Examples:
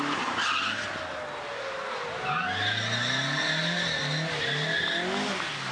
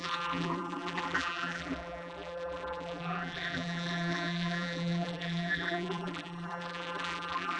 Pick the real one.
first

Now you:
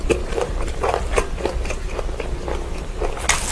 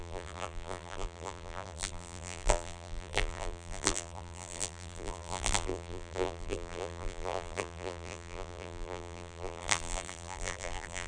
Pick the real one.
first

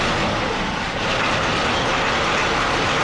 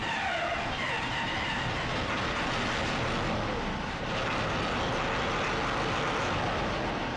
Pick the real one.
second